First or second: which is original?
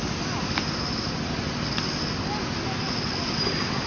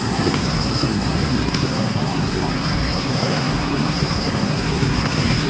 first